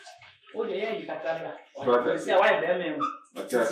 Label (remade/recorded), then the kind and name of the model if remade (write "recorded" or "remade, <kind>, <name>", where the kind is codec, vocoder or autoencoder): remade, autoencoder, DAC-VAE